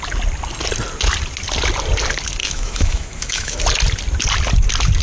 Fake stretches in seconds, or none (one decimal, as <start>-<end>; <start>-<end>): 2.4-3.6